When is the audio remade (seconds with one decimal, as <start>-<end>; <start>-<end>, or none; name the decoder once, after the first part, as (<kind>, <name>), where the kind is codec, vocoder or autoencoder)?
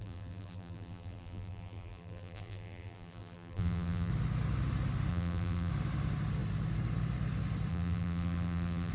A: 0.0-4.1 (vocoder, BigVGAN v2); 5.1-5.7; 7.7-8.9